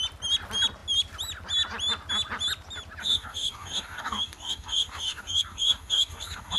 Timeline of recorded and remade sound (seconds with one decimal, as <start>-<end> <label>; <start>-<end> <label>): 0.0-3.0 recorded; 3.0-6.6 remade